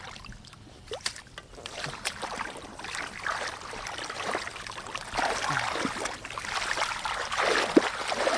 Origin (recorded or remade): recorded